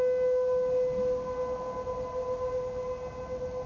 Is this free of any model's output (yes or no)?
yes